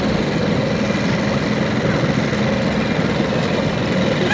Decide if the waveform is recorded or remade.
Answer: recorded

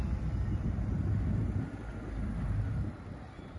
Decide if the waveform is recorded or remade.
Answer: recorded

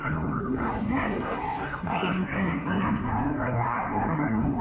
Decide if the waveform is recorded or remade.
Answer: remade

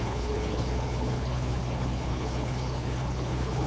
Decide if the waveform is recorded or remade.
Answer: remade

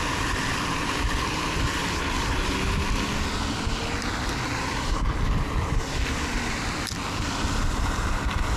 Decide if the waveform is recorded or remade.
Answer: recorded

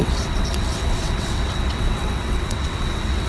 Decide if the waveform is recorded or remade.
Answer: remade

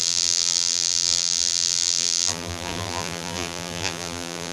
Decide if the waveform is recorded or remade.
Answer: remade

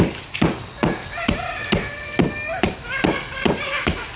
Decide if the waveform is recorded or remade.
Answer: recorded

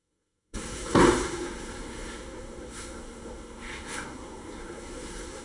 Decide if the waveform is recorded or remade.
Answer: remade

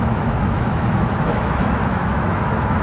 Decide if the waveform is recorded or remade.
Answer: remade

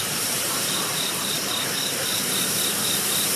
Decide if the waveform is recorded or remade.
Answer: remade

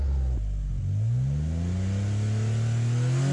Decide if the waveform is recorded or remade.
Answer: recorded